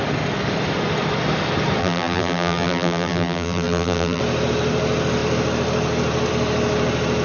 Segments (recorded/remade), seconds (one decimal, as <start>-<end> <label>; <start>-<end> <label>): 0.0-1.8 recorded; 1.8-4.2 remade; 4.2-7.2 recorded